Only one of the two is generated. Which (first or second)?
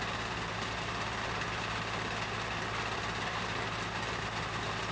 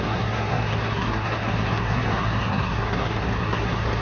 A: second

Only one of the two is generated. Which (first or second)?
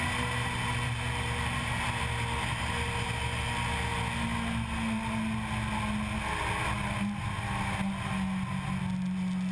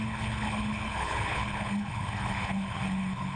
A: second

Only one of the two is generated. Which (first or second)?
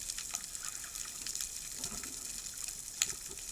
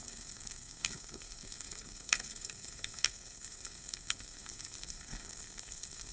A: second